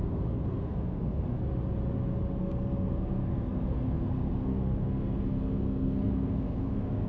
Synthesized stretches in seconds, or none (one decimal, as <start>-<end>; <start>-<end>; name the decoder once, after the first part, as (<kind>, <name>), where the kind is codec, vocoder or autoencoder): 0.0-1.4 (codec, SNAC); 2.4-7.1